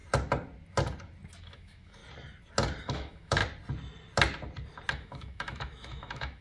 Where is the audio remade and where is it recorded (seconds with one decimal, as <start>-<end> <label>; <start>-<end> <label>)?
0.0-1.4 recorded; 1.4-2.0 remade; 2.0-2.8 recorded; 2.8-3.4 remade; 3.4-4.9 recorded; 4.9-6.4 remade